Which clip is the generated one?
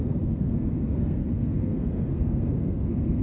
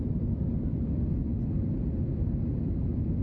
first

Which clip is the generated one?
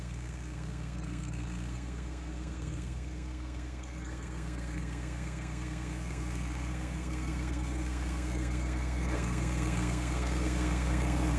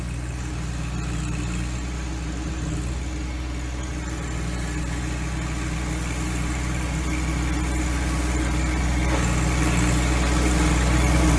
first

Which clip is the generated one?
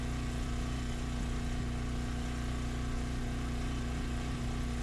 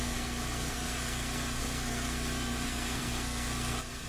second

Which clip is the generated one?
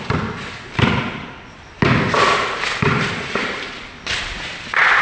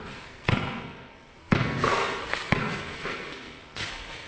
second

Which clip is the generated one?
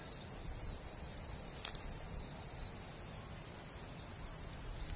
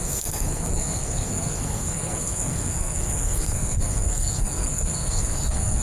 second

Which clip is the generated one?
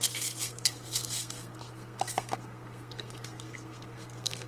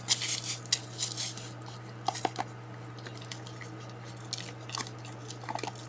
first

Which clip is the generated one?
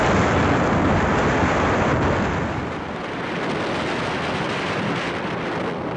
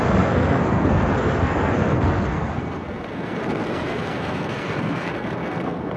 second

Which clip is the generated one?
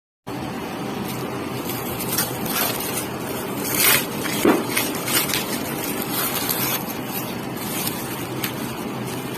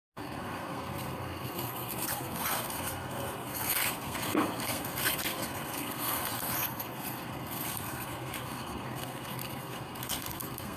second